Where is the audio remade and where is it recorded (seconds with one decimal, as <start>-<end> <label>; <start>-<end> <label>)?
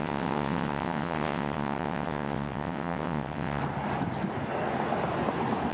0.0-3.6 remade; 3.6-5.7 recorded